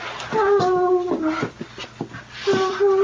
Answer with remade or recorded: recorded